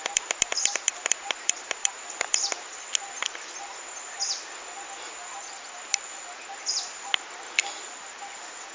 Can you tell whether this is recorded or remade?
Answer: recorded